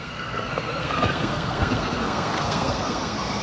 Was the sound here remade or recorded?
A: remade